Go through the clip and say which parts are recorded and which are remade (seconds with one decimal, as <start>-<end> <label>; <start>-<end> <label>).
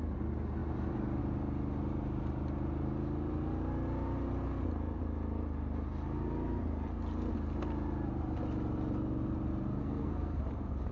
0.0-9.8 recorded; 9.8-10.4 remade; 10.4-10.9 recorded